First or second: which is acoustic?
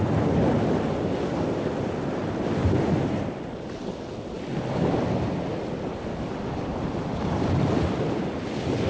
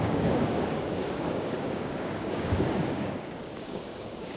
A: first